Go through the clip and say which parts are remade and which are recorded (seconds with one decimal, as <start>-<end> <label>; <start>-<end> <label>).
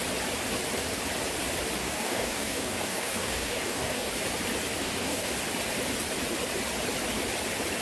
0.0-1.8 recorded; 1.8-4.1 remade; 4.1-4.8 recorded; 4.8-5.3 remade; 5.3-7.8 recorded